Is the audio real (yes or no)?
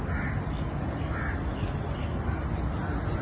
yes